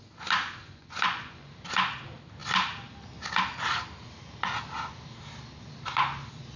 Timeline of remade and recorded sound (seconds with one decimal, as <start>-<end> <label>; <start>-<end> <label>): 0.0-0.6 recorded; 0.6-1.5 remade; 1.5-6.6 recorded